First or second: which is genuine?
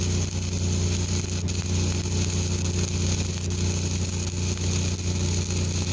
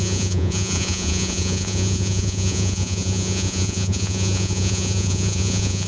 first